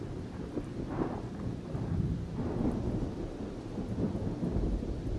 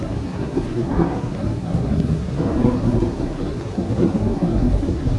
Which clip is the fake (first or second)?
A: second